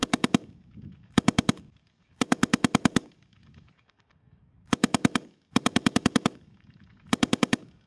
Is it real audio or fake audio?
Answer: fake